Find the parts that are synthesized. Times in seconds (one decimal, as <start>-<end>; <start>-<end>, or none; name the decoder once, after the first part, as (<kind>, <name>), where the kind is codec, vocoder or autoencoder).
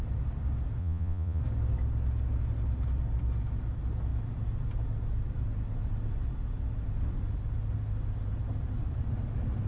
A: 0.8-1.4 (vocoder, Vocos)